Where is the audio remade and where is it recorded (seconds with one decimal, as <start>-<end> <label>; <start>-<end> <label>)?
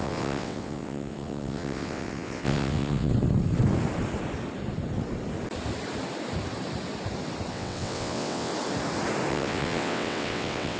0.0-3.1 remade; 3.1-7.5 recorded; 7.5-8.5 remade; 8.5-9.3 recorded; 9.3-10.8 remade